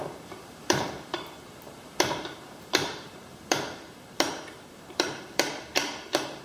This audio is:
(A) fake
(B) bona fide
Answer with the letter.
A